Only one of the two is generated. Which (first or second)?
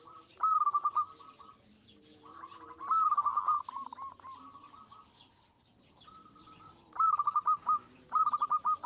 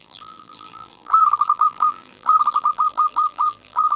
second